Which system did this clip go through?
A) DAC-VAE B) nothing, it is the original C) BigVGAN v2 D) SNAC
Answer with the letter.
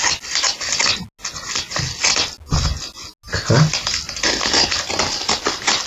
B